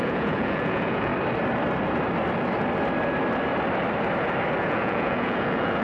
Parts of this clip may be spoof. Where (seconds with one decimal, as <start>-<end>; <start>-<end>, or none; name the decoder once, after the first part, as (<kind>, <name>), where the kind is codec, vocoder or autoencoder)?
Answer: 0.0-1.1 (vocoder, Vocos); 4.6-5.8